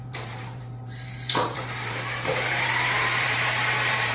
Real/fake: fake